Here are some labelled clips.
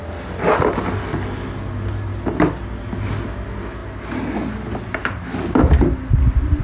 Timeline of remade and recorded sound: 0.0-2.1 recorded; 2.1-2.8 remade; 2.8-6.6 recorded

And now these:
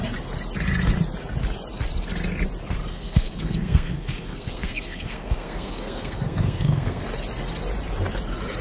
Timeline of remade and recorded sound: 0.0-2.9 recorded; 2.9-7.0 remade; 7.0-8.6 recorded

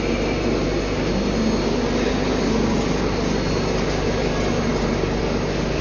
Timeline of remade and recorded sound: 0.0-4.7 recorded; 4.7-5.2 remade; 5.2-5.8 recorded